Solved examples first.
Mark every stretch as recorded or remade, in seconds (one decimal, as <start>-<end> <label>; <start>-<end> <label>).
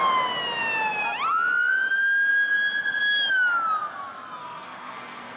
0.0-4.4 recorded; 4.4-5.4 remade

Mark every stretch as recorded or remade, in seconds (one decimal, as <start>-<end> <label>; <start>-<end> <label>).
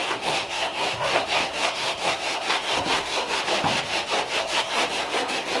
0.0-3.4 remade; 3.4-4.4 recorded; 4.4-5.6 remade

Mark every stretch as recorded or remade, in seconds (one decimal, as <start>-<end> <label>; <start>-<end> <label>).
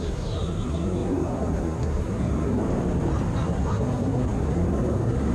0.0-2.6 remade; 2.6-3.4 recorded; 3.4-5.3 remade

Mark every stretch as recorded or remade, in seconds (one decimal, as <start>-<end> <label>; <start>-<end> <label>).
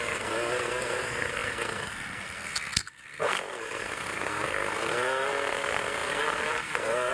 0.0-7.1 remade